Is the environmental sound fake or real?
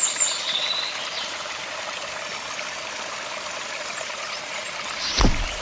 real